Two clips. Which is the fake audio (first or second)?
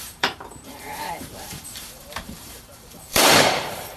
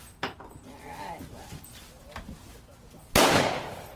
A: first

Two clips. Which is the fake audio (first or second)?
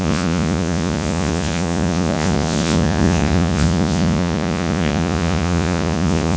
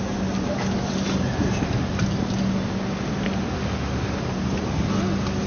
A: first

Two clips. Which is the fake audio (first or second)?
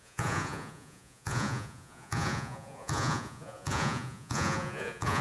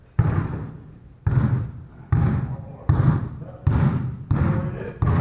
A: first